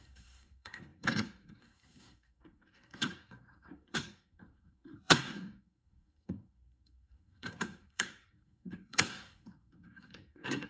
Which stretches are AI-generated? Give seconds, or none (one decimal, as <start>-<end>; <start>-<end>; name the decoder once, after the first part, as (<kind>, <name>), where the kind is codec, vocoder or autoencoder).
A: 0.0-10.7 (codec, SNAC)